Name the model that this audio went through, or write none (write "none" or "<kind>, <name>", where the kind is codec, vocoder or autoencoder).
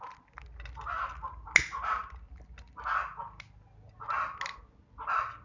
none